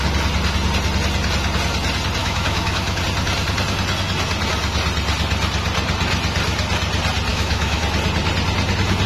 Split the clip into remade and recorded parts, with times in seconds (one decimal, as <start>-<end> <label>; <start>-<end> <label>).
0.0-2.2 recorded; 2.2-3.0 remade; 3.0-7.3 recorded; 7.3-7.8 remade; 7.8-9.1 recorded